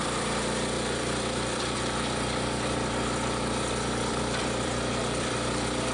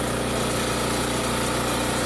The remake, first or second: first